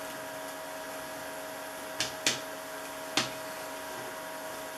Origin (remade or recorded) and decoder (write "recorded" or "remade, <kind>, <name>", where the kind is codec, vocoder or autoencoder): recorded